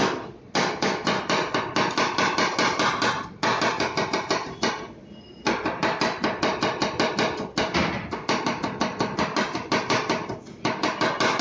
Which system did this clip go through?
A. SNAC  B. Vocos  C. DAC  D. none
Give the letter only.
D